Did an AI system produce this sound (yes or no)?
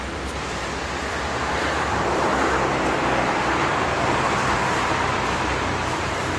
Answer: yes